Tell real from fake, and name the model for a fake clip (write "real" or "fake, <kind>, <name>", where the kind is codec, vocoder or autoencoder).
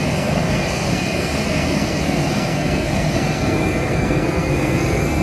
fake, codec, SNAC